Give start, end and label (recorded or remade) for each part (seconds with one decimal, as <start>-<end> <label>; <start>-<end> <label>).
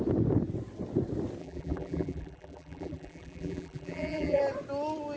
0.0-1.4 recorded; 1.4-4.4 remade; 4.4-5.2 recorded